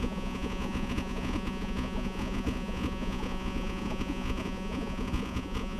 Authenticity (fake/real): fake